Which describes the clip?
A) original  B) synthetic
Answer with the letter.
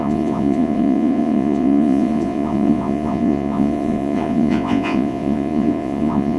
B